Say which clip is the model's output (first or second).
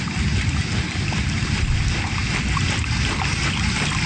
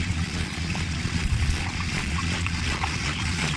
second